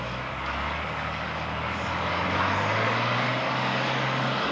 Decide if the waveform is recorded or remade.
remade